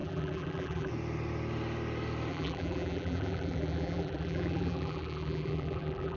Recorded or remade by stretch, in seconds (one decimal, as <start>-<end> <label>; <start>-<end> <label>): 0.0-0.9 remade; 0.9-2.3 recorded; 2.3-6.2 remade